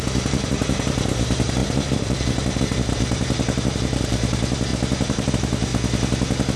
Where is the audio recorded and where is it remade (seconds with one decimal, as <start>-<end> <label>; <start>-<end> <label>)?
0.0-5.7 remade; 5.7-6.6 recorded